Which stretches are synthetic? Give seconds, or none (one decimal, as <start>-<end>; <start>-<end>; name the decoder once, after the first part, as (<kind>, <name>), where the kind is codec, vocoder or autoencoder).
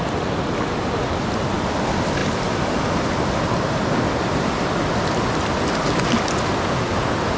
none